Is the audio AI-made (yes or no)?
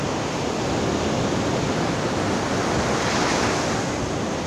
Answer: no